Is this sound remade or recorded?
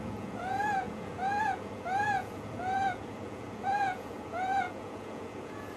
remade